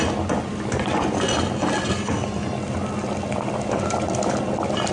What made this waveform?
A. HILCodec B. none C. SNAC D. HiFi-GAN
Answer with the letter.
B